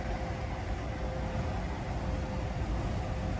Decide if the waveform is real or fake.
real